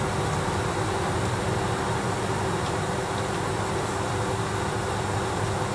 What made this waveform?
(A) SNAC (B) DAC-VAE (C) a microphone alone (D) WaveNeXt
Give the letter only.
C